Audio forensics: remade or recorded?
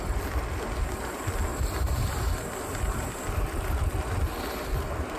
recorded